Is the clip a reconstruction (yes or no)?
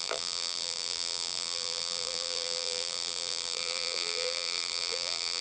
yes